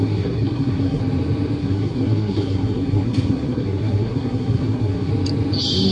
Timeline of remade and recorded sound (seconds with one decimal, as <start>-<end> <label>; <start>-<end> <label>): 0.0-1.0 remade; 1.0-1.6 recorded; 1.6-5.1 remade; 5.1-5.9 recorded